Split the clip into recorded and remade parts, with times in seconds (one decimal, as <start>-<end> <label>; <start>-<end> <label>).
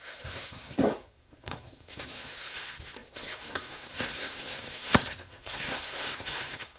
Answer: 0.0-6.8 remade